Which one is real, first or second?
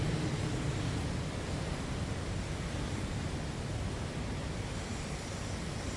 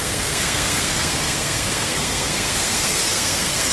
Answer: first